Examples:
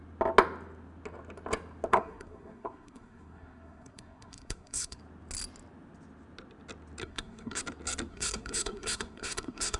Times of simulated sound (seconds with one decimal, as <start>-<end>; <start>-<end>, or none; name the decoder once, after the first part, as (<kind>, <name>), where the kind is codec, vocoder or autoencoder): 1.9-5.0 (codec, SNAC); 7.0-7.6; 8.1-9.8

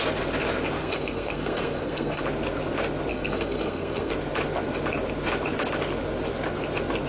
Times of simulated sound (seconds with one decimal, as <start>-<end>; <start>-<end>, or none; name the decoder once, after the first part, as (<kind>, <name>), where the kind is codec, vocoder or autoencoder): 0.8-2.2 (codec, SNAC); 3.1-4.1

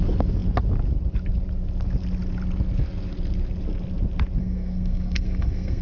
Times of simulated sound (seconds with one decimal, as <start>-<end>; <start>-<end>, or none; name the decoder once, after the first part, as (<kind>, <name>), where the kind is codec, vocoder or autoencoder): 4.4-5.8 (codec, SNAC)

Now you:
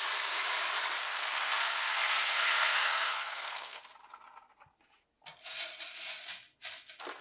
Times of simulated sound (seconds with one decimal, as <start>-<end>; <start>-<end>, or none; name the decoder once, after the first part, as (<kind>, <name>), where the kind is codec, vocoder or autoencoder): 1.0-3.8 (codec, SNAC)

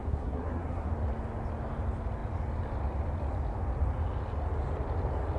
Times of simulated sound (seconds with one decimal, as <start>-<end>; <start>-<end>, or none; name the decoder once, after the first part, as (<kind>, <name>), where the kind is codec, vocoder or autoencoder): 0.0-0.9 (codec, SNAC)